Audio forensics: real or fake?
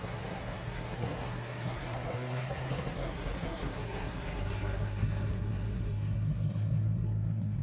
fake